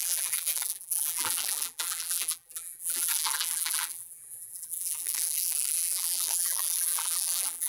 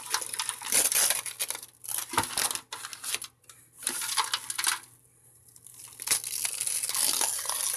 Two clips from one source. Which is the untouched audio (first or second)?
second